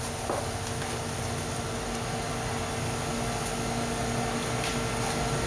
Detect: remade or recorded recorded